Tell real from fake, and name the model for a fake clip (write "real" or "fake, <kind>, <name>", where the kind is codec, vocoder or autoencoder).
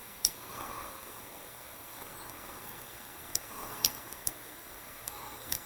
fake, codec, SNAC